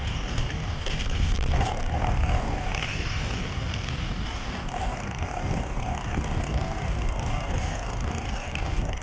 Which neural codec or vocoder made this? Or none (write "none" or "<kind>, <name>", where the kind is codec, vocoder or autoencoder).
codec, DAC